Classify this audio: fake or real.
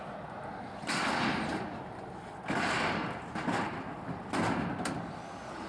real